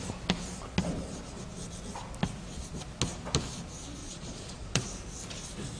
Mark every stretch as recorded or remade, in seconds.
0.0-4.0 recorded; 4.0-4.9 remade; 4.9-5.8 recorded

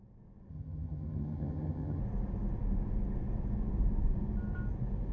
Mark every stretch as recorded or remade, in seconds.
0.0-0.5 recorded; 0.5-2.0 remade; 2.0-5.1 recorded

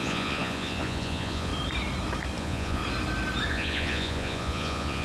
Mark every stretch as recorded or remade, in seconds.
0.0-1.5 remade; 1.5-2.4 recorded; 2.4-2.8 remade; 2.8-3.5 recorded; 3.5-5.0 remade

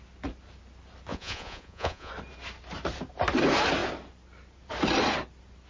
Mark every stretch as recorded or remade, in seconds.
0.0-1.1 recorded; 1.1-2.1 remade; 2.1-5.7 recorded

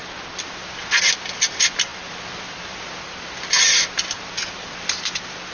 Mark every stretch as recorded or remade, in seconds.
0.0-5.5 recorded

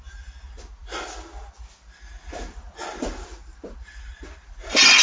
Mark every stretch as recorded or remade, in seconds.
0.0-5.0 recorded

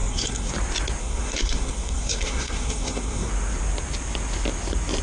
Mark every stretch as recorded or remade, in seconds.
0.0-0.5 remade; 0.5-1.0 recorded; 1.0-3.3 remade; 3.3-5.0 recorded

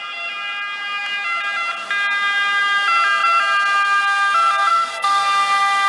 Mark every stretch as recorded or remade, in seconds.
0.0-4.7 recorded; 4.7-5.2 remade; 5.2-5.9 recorded